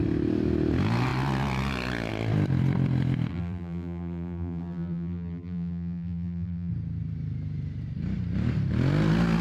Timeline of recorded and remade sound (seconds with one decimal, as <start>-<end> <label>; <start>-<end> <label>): 0.0-3.3 recorded; 3.3-6.7 remade; 6.7-9.4 recorded